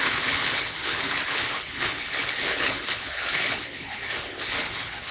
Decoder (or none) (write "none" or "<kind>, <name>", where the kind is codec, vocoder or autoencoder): codec, HILCodec